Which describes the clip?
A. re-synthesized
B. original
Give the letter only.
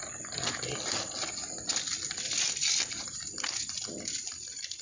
B